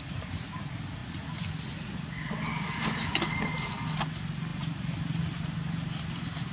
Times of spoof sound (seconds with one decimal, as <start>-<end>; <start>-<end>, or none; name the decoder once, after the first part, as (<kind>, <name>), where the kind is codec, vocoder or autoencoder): none